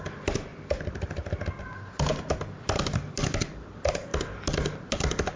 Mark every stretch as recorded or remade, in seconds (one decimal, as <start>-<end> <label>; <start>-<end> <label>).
0.0-5.4 recorded